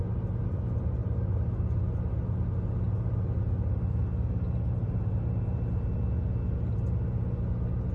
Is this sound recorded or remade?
recorded